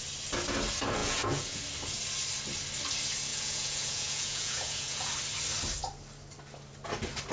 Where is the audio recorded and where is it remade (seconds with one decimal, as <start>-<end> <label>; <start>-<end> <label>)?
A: 0.0-1.0 recorded; 1.0-1.6 remade; 1.6-3.3 recorded; 3.3-5.1 remade; 5.1-7.3 recorded